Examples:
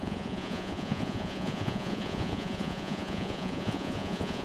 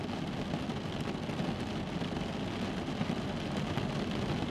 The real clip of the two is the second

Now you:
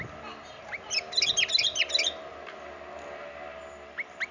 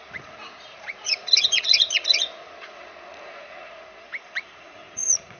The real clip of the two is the first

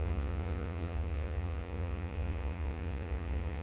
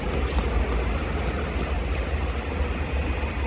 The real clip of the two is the second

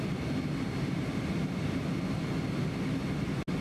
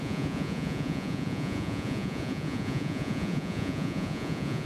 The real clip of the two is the first